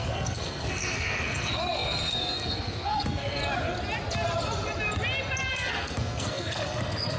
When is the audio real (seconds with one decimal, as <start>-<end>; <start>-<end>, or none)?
3.4-5.5